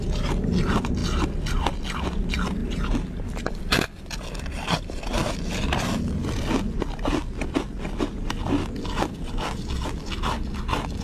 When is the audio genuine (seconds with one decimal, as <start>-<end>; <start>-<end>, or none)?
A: 0.0-11.0